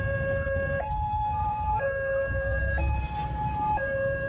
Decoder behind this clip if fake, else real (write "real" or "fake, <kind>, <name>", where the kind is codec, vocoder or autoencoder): fake, vocoder, BigVGAN v2